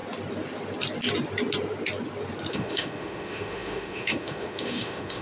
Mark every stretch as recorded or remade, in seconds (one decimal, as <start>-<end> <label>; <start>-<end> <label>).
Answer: 0.0-2.5 recorded; 2.5-5.2 remade